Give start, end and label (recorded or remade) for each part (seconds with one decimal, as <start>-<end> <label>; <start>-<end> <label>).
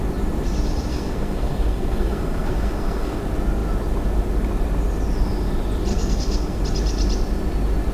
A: 0.0-0.9 recorded; 0.9-3.2 remade; 3.2-5.9 recorded; 5.9-6.6 remade; 6.6-7.9 recorded